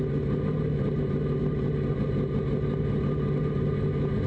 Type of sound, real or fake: real